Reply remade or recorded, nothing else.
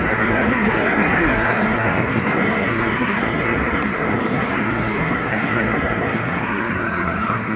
remade